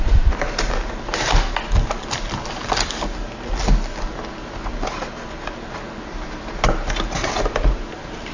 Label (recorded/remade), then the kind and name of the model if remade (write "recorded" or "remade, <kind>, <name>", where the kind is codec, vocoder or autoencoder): recorded